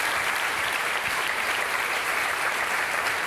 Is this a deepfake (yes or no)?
yes